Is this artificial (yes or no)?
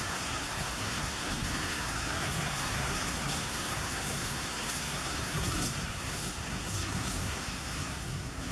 yes